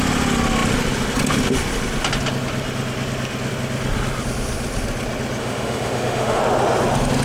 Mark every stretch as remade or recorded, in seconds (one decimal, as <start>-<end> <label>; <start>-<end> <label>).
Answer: 0.0-5.4 recorded; 5.4-6.4 remade; 6.4-7.2 recorded